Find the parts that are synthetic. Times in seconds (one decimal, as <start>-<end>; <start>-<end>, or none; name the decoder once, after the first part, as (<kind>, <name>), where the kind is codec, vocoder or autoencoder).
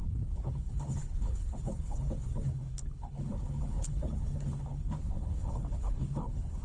0.0-6.6 (codec, HILCodec)